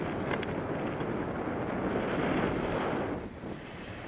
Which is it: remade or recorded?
recorded